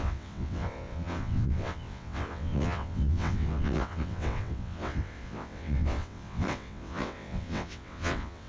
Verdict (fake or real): fake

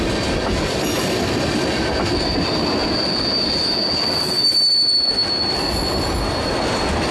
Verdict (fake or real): real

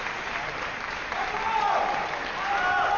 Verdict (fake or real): real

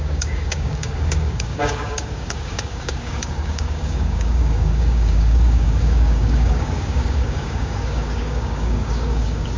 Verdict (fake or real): fake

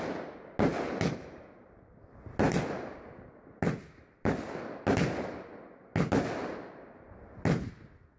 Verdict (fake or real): real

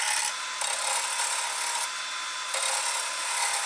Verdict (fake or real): real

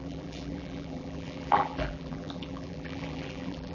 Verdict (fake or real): fake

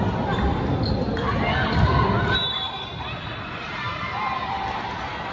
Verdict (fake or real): real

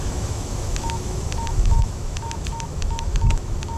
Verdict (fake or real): fake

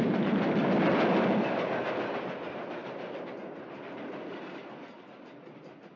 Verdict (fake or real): real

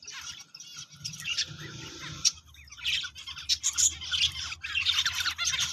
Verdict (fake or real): real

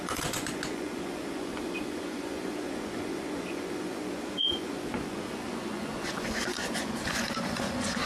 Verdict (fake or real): fake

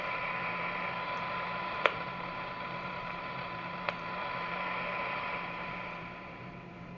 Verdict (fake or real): fake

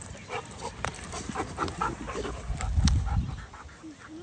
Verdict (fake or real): real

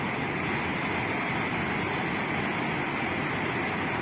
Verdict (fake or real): real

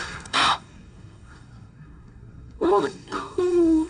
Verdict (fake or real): fake